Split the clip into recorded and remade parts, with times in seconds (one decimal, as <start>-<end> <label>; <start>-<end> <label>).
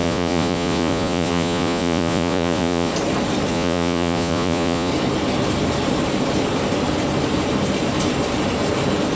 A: 0.0-2.9 remade; 2.9-3.5 recorded; 3.5-4.9 remade; 4.9-9.2 recorded